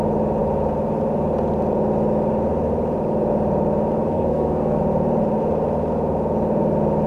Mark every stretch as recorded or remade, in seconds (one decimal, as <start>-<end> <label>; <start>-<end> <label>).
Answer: 0.0-4.1 recorded; 4.1-4.8 remade; 4.8-7.1 recorded